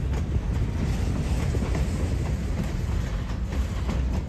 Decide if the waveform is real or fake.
real